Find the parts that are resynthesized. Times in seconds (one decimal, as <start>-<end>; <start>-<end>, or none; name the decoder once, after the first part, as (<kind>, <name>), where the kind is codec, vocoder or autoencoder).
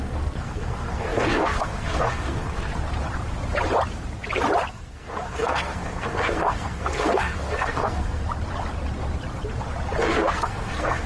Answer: 0.0-2.7 (codec, SNAC); 4.7-8.2; 10.0-11.1